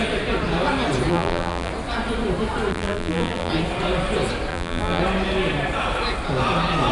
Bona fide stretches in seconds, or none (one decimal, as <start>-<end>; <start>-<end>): 0.0-1.1; 1.7-2.7; 3.5-4.5; 5.0-6.9